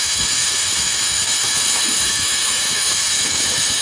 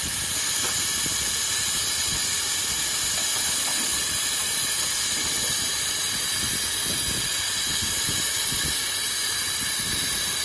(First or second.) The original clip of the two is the second